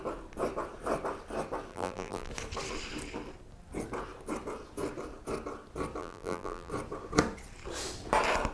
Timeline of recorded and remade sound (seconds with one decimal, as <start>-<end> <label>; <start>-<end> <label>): 0.0-1.7 recorded; 1.7-2.3 remade; 2.3-6.0 recorded; 6.0-6.7 remade; 6.7-8.5 recorded